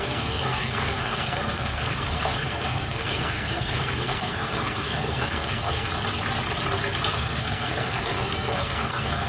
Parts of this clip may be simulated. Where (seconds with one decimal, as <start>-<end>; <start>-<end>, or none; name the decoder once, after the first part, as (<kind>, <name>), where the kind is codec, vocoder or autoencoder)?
0.0-5.9 (codec, SNAC); 7.1-9.3